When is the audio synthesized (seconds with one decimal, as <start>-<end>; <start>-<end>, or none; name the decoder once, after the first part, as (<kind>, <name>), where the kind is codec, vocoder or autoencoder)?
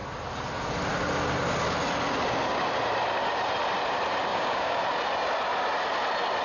4.3-4.8 (codec, DAC)